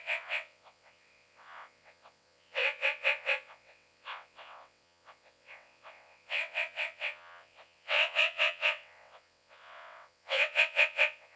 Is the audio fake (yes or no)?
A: yes